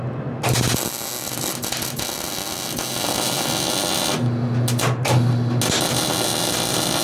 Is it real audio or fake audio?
real